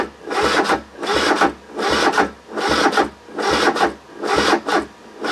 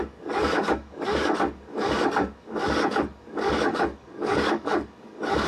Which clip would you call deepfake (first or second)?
second